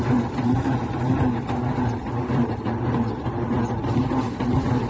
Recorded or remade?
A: recorded